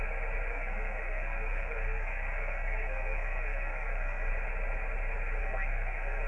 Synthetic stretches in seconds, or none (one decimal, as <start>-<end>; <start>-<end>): 0.5-4.3; 5.4-6.3